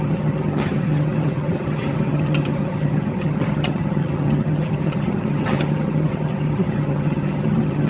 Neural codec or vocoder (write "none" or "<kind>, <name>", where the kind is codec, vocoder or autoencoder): vocoder, HiFi-GAN